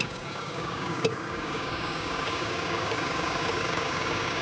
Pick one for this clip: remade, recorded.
remade